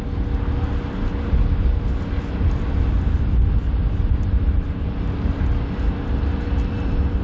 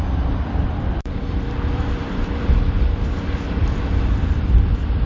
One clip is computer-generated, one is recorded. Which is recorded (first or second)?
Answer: first